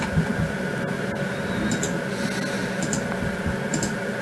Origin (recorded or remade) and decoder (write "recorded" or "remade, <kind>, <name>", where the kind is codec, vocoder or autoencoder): recorded